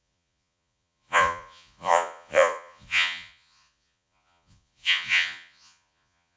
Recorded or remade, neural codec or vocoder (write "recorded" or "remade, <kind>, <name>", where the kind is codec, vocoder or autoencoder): remade, vocoder, Vocos